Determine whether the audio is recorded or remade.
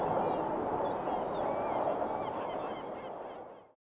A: recorded